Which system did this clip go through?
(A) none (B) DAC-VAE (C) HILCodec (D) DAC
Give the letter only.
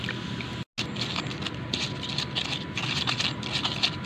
A